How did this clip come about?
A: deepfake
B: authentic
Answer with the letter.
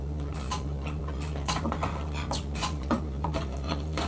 A